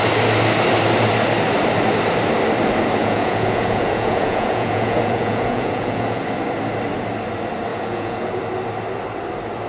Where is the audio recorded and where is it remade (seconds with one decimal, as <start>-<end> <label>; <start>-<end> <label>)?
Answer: 0.0-3.0 recorded; 3.0-6.2 remade; 6.2-7.7 recorded; 7.7-8.4 remade; 8.4-9.7 recorded